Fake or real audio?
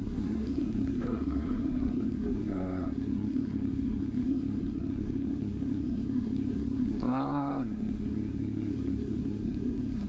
fake